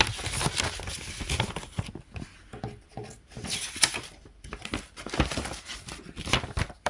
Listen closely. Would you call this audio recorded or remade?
recorded